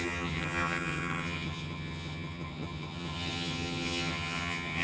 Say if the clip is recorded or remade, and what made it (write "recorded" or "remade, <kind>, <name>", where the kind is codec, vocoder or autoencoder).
remade, vocoder, HiFi-GAN